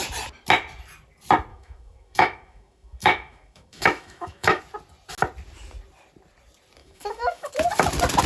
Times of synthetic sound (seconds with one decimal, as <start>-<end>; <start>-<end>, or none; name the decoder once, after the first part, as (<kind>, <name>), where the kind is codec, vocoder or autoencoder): 1.5-4.6 (autoencoder, DAC-VAE); 6.8-7.5